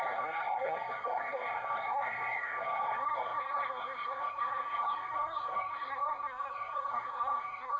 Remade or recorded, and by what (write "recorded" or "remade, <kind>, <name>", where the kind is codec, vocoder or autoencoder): remade, codec, SNAC